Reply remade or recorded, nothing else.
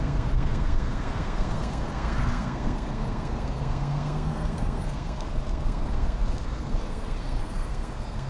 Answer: remade